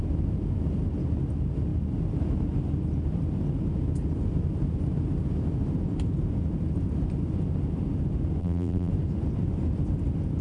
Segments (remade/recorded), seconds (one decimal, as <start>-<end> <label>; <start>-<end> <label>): 0.0-8.4 recorded; 8.4-8.9 remade; 8.9-10.4 recorded